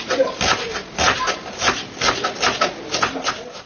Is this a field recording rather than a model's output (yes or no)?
yes